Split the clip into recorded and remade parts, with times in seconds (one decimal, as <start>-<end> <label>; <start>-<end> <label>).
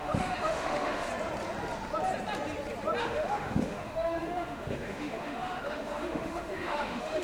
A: 0.0-1.1 remade; 1.1-3.0 recorded; 3.0-7.2 remade